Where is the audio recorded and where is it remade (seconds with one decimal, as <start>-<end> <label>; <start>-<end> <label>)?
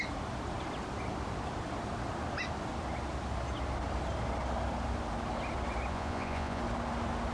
0.0-5.9 recorded; 5.9-6.6 remade; 6.6-7.3 recorded